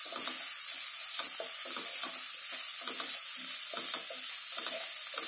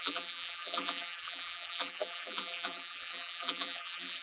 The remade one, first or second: second